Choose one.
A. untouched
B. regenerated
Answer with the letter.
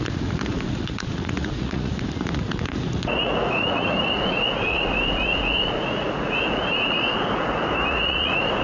B